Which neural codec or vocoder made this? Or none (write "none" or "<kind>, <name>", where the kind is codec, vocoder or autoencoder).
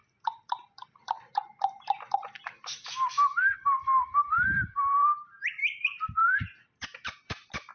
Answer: vocoder, BigVGAN v2